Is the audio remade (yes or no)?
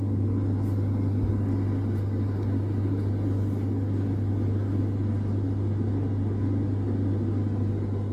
no